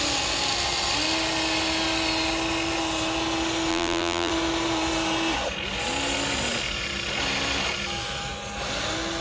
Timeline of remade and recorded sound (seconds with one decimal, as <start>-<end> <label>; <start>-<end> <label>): 0.0-3.7 recorded; 3.7-4.3 remade; 4.3-9.2 recorded